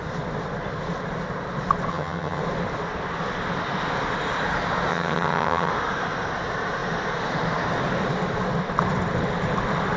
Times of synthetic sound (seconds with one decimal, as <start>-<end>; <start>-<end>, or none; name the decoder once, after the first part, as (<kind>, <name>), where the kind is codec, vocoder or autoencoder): 1.9-2.4 (vocoder, HiFi-GAN); 4.9-5.7